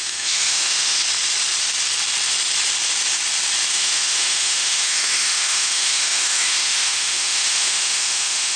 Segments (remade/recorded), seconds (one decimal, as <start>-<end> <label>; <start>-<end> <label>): 0.0-1.0 remade; 1.0-3.7 recorded; 3.7-8.6 remade